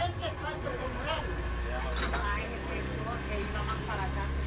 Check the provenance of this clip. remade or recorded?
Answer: recorded